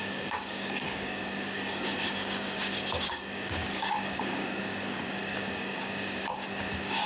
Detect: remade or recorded remade